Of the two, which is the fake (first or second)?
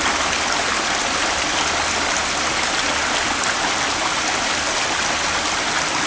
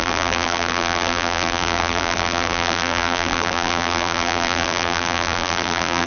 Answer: second